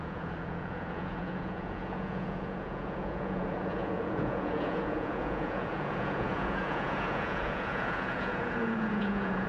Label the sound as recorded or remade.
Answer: remade